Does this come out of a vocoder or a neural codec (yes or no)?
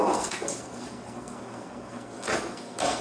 yes